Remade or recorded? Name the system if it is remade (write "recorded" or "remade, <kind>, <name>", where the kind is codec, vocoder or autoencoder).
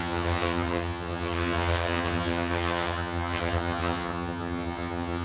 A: remade, vocoder, HiFi-GAN